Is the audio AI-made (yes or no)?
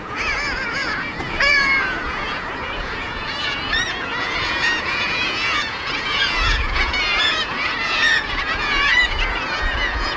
yes